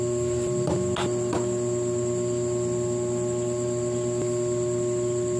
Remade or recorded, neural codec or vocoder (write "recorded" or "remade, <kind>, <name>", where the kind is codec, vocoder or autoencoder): recorded